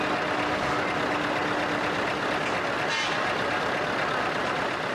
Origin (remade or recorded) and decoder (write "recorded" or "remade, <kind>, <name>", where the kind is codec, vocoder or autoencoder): recorded